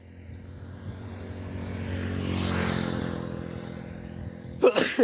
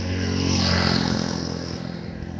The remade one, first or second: second